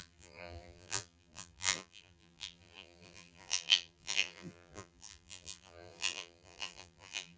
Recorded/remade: remade